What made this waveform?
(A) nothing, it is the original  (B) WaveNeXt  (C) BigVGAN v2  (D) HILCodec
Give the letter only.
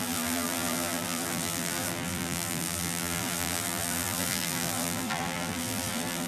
C